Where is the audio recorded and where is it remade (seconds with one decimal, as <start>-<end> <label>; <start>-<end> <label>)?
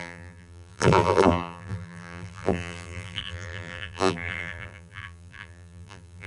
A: 0.0-6.3 remade